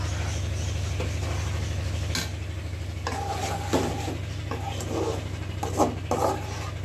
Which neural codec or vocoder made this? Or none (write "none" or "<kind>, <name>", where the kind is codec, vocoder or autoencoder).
none